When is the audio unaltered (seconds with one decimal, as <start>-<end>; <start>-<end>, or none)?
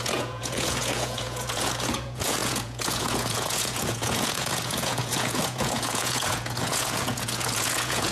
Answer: none